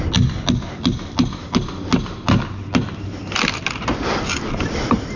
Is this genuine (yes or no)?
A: yes